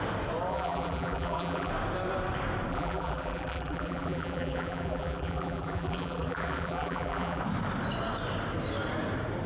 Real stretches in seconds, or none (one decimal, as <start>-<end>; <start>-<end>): 0.0-0.5; 1.7-2.7; 7.4-9.5